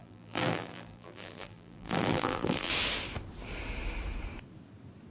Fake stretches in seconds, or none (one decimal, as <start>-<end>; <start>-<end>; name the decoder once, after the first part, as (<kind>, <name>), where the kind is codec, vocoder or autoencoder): 0.0-2.7 (vocoder, BigVGAN v2)